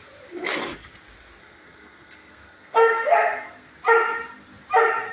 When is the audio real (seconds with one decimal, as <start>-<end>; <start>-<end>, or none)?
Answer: 0.0-1.4; 3.7-5.1